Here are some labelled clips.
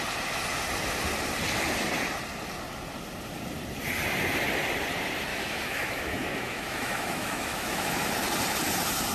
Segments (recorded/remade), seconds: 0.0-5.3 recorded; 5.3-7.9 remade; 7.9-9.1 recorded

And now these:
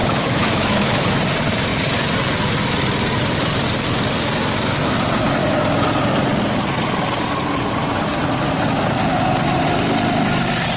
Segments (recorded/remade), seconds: 0.0-1.2 remade; 1.2-10.8 recorded

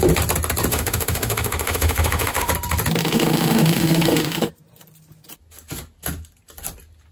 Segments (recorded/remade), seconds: 0.0-0.7 recorded; 0.7-2.5 remade; 2.5-3.0 recorded; 3.0-4.5 remade; 4.5-7.1 recorded

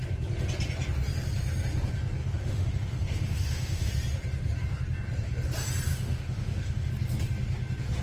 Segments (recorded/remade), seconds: 0.0-2.2 recorded; 2.2-3.9 remade; 3.9-5.9 recorded; 5.9-6.9 remade; 6.9-8.0 recorded

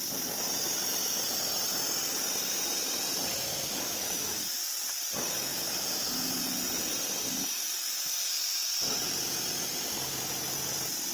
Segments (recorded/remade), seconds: 0.0-3.3 recorded; 3.3-4.6 remade; 4.6-11.1 recorded

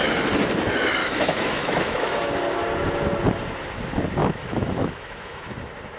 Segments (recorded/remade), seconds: 0.0-1.0 recorded; 1.0-2.3 remade; 2.3-4.2 recorded; 4.2-5.5 remade; 5.5-6.0 recorded